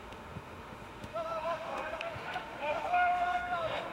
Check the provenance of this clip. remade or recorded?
remade